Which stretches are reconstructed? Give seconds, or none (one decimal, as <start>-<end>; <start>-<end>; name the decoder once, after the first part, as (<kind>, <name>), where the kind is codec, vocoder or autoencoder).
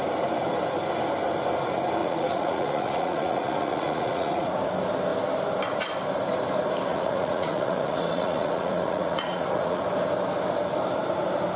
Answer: 2.0-4.5 (vocoder, Vocos); 6.9-9.8